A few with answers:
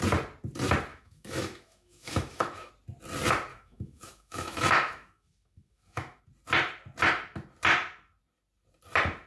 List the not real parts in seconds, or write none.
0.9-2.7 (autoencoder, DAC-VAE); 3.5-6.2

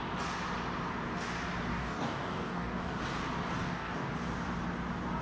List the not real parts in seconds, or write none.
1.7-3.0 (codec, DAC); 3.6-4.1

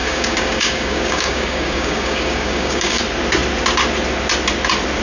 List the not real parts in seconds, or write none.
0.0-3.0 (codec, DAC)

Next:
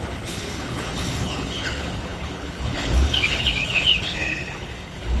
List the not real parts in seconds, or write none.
0.0-5.2 (codec, HILCodec)